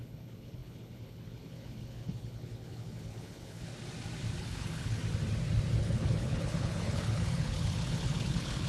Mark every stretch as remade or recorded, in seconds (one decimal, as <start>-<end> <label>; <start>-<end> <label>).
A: 0.0-3.7 remade; 3.7-4.4 recorded; 4.4-5.0 remade; 5.0-5.8 recorded; 5.8-8.7 remade